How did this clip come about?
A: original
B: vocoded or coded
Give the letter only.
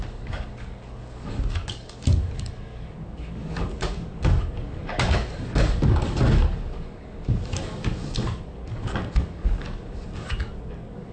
B